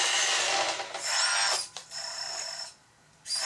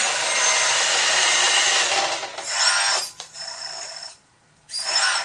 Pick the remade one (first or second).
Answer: second